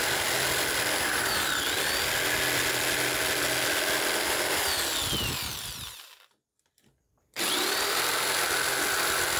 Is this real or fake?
real